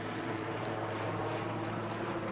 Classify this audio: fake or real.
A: fake